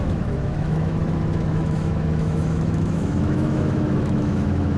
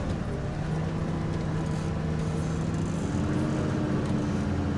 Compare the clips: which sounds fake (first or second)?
first